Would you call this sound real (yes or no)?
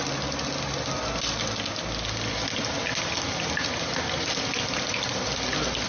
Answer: yes